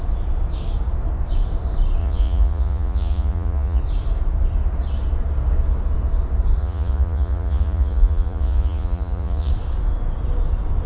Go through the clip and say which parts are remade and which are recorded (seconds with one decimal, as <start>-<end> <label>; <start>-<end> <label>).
0.0-2.0 recorded; 2.0-3.8 remade; 3.8-6.6 recorded; 6.6-9.5 remade; 9.5-10.9 recorded